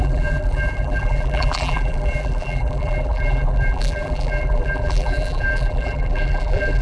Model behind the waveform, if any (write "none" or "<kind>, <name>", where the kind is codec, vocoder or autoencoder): vocoder, BigVGAN v2